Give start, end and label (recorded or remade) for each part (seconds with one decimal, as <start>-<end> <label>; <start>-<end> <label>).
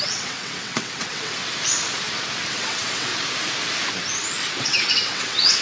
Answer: 0.0-1.4 remade; 1.4-2.5 recorded; 2.5-3.1 remade; 3.1-4.6 recorded; 4.6-5.6 remade